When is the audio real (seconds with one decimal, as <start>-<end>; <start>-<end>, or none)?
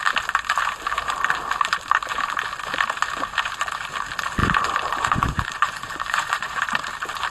0.0-4.4; 6.6-7.3